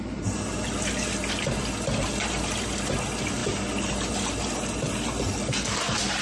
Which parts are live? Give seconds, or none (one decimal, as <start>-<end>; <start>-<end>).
0.0-6.2